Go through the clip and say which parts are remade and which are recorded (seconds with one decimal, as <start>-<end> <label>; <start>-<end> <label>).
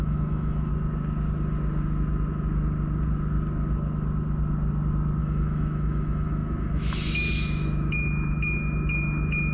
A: 0.0-0.7 remade; 0.7-5.2 recorded; 5.2-9.5 remade